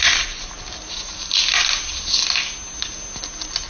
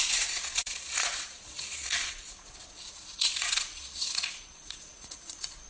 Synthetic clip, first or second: second